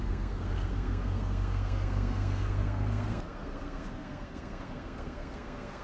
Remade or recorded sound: remade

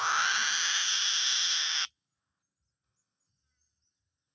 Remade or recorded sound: recorded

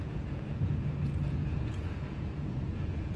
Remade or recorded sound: remade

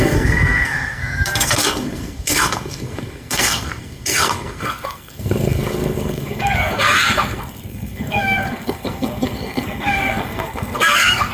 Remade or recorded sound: remade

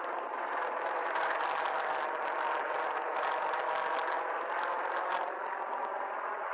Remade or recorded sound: recorded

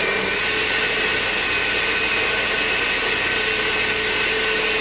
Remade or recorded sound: recorded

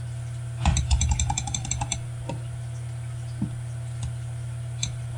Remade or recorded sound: recorded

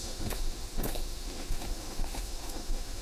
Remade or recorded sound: remade